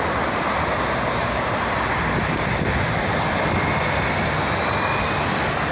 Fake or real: real